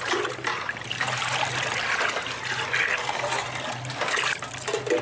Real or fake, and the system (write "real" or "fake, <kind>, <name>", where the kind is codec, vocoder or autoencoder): real